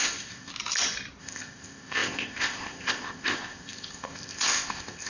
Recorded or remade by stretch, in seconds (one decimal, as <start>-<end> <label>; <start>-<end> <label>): 0.0-0.5 remade; 0.5-1.2 recorded; 1.2-5.1 remade